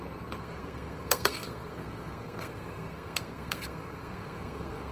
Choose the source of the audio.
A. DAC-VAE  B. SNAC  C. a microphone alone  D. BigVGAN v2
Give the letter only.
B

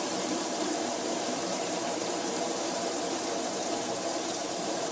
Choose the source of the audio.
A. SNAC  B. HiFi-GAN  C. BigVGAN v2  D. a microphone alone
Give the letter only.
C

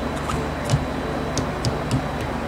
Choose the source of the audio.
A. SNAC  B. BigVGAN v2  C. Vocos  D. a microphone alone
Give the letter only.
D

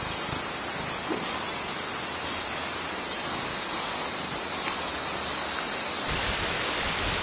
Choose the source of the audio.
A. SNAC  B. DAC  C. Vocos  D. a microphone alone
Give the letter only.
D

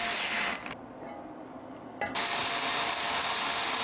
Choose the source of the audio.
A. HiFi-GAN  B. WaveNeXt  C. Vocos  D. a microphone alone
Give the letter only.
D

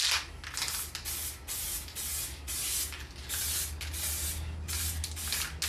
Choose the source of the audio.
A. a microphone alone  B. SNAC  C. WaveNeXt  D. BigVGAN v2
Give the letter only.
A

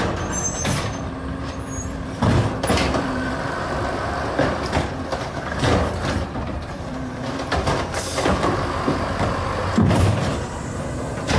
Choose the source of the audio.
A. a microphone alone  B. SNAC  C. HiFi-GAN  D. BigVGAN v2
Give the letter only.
D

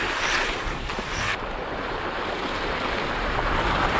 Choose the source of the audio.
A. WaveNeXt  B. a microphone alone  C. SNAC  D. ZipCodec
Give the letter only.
B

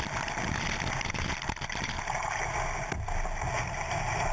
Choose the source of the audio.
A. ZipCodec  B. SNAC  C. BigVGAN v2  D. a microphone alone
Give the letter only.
D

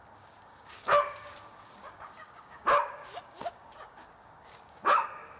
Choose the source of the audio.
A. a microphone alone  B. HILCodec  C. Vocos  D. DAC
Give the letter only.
D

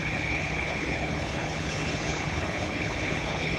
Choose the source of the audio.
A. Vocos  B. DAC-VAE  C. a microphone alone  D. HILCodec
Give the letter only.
D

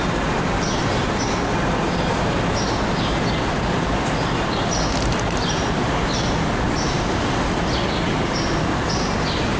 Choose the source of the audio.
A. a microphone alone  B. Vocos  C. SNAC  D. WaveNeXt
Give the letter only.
A